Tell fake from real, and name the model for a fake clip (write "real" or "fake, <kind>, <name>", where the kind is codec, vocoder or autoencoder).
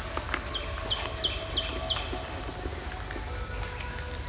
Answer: real